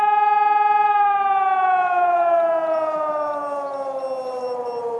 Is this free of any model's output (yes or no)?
yes